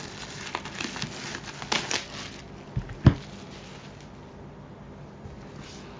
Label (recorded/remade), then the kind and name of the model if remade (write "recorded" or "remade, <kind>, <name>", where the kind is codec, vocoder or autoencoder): recorded